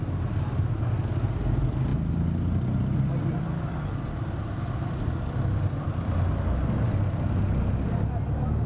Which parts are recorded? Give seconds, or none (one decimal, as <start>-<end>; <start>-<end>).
0.0-8.7